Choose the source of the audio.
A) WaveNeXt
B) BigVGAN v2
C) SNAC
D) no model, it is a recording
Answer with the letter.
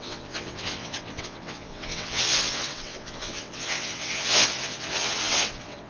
A